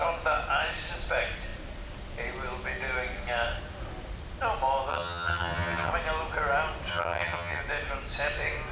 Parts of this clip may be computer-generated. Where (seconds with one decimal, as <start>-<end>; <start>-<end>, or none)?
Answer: 4.9-5.9; 6.9-7.6

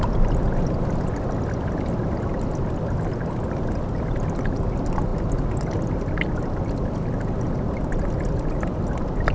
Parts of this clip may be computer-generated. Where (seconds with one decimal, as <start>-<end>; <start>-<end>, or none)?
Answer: none

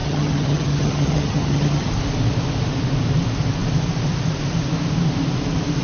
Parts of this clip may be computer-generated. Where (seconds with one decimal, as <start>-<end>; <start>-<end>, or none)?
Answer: 0.0-1.9

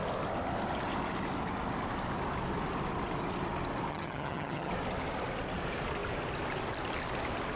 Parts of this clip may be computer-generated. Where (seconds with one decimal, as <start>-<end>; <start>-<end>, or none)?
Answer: 3.9-4.7

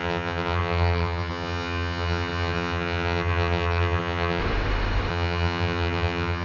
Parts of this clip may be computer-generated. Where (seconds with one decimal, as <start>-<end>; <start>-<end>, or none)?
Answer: 0.0-4.4; 5.1-6.4